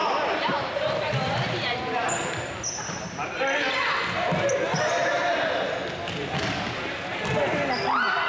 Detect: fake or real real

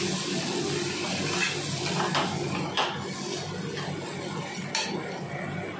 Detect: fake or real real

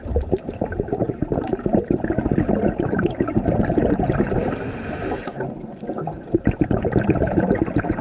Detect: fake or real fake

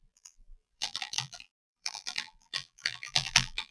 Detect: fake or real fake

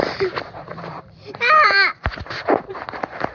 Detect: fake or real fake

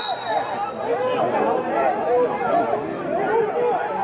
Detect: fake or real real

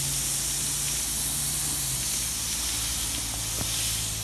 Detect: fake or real real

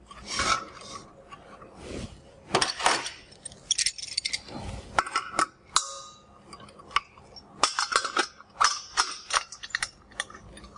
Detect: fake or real real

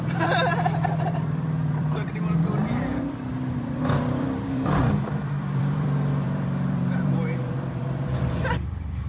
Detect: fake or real fake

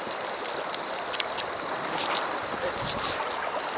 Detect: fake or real fake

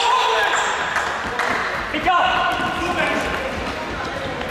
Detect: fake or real real